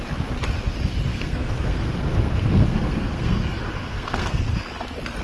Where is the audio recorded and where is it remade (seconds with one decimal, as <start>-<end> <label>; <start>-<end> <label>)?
0.0-1.1 recorded; 1.1-3.3 remade; 3.3-3.9 recorded; 3.9-4.4 remade; 4.4-5.2 recorded